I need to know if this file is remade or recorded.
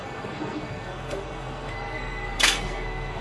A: remade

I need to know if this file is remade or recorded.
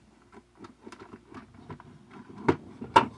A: recorded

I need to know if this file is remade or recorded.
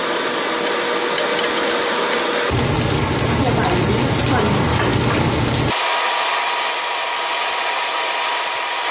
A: recorded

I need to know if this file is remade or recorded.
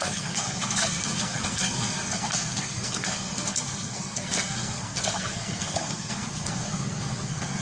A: remade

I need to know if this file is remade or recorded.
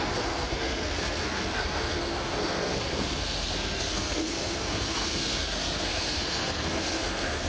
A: remade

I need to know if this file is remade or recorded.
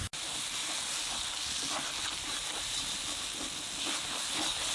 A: recorded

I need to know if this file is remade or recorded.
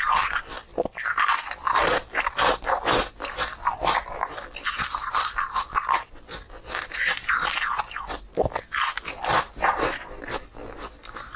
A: recorded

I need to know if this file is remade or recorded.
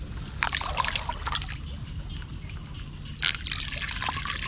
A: recorded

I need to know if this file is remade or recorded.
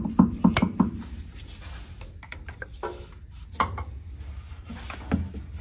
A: recorded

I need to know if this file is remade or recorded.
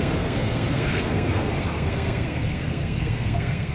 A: remade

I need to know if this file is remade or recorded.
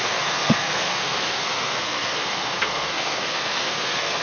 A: remade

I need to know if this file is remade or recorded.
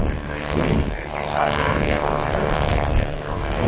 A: remade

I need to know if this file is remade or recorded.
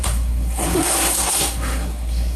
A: remade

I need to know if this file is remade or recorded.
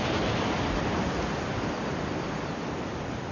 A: recorded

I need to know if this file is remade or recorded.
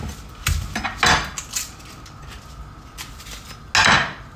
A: recorded